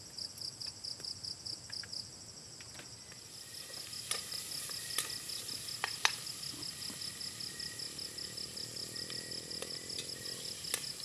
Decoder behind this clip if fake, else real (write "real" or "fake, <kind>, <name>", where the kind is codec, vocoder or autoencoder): real